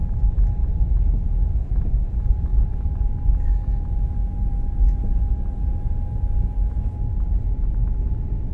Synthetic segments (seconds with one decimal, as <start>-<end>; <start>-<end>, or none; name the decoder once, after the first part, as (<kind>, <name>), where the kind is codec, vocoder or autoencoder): 0.6-1.3 (vocoder, BigVGAN v2); 2.5-3.1